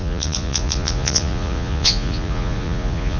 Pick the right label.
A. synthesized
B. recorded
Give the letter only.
A